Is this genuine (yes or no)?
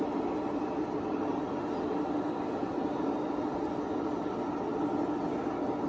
yes